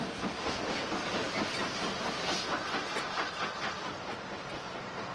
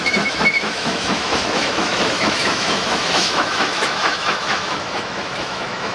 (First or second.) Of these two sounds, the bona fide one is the first